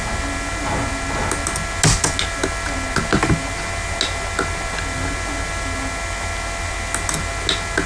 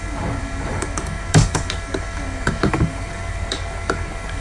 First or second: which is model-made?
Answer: second